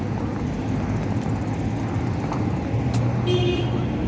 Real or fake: real